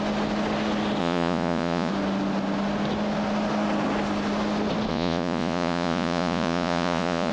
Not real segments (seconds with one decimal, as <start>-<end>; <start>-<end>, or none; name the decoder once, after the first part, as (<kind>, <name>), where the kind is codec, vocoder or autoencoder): 1.0-1.9 (vocoder, Vocos); 4.9-7.3